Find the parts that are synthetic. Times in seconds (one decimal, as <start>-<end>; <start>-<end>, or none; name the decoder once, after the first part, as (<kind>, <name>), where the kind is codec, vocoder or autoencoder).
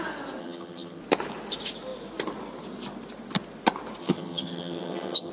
0.4-1.0 (vocoder, HiFi-GAN); 4.0-5.3